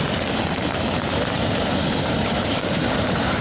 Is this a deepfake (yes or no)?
yes